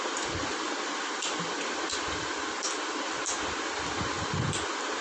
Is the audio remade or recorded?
recorded